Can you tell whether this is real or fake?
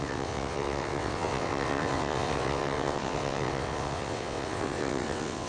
fake